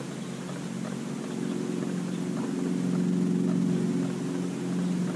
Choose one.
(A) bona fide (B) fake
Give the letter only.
A